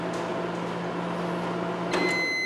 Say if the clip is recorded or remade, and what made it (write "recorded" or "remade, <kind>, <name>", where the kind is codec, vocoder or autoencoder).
recorded